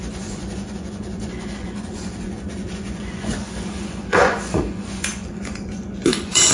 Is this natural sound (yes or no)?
no